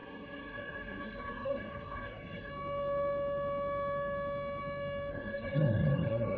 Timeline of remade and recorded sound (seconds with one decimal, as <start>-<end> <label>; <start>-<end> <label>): 0.0-2.5 remade; 2.5-5.1 recorded; 5.1-6.4 remade

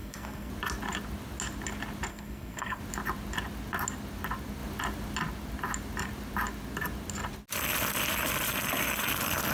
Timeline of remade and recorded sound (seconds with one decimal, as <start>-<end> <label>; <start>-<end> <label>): 0.0-0.5 remade; 0.5-2.1 recorded; 2.1-2.8 remade; 2.8-9.5 recorded

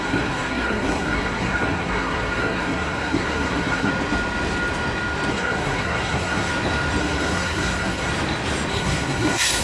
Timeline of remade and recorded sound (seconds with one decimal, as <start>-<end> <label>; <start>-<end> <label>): 0.0-3.9 remade; 3.9-5.3 recorded; 5.3-6.5 remade; 6.5-7.0 recorded; 7.0-8.1 remade; 8.1-8.7 recorded; 8.7-9.6 remade

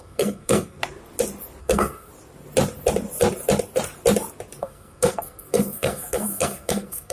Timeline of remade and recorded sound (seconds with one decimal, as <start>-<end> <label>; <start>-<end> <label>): 0.0-0.8 remade; 0.8-1.6 recorded; 1.6-2.1 remade; 2.1-4.6 recorded; 4.6-7.1 remade